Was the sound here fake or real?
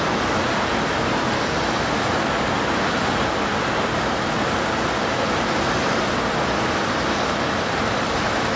real